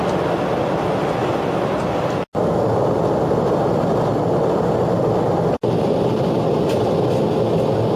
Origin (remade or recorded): recorded